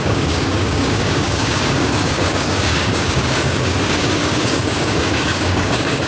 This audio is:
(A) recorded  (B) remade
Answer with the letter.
B